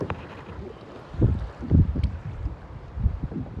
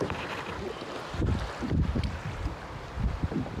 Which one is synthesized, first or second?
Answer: first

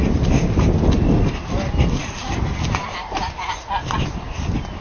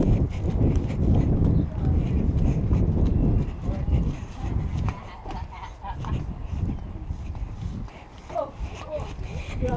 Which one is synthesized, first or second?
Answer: second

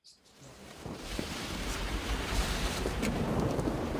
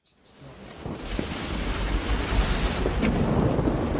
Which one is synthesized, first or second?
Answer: first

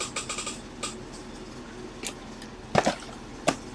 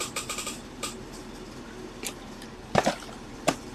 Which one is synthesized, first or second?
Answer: second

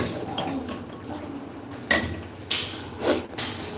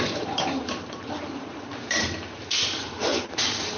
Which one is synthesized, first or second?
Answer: second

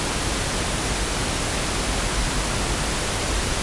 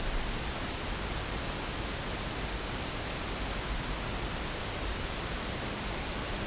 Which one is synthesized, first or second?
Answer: second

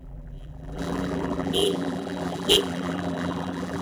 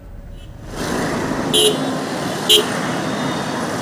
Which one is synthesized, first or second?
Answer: first